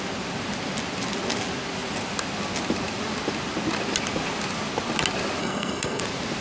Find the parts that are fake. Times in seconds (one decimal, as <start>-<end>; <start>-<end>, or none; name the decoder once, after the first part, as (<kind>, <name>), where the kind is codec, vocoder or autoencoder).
5.4-6.0 (codec, SNAC)